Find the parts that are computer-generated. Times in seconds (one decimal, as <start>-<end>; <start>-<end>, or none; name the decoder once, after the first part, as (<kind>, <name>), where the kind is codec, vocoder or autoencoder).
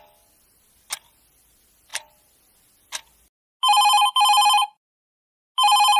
none